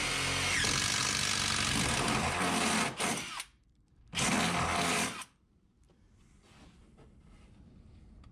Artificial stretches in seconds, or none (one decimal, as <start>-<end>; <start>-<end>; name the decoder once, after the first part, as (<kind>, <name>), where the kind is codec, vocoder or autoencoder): none